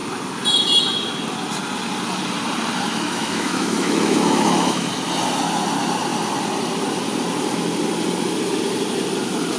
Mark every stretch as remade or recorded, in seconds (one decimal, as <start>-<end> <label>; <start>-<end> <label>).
0.0-2.9 recorded; 2.9-4.9 remade; 4.9-9.6 recorded